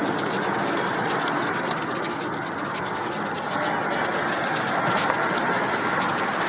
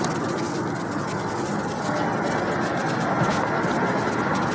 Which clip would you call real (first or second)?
second